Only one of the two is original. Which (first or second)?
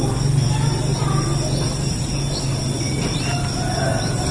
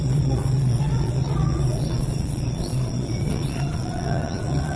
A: first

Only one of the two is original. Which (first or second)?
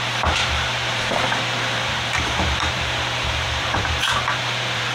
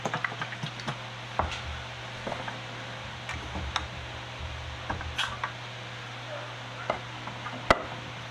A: second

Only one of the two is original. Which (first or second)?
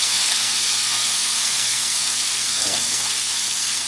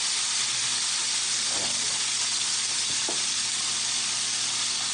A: second